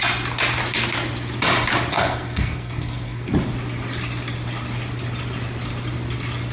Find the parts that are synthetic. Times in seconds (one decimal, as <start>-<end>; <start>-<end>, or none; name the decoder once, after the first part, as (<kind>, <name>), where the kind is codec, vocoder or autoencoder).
1.9-3.3 (codec, SNAC)